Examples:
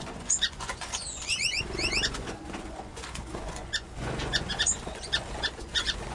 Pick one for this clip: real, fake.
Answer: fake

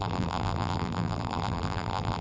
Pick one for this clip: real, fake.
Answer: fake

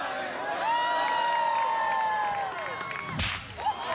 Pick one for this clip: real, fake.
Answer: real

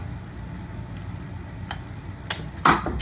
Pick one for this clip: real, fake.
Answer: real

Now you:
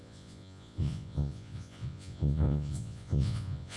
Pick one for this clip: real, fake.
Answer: fake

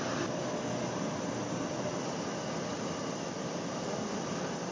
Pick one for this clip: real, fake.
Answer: real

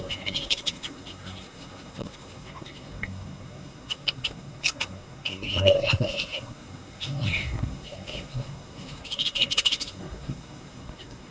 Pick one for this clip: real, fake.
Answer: fake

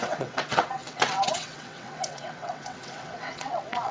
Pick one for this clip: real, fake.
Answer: fake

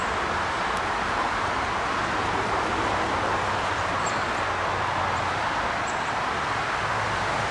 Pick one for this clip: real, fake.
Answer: real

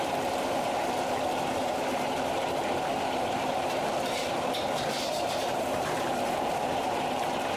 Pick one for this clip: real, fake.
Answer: fake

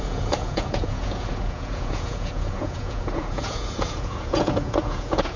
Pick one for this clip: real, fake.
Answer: fake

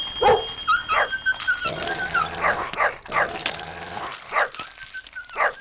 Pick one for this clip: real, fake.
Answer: real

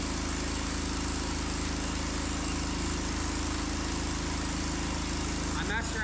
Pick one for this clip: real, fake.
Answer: real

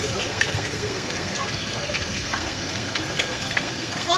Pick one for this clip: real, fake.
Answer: fake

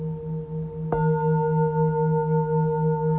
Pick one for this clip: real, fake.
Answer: real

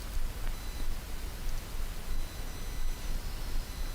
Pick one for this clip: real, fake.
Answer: real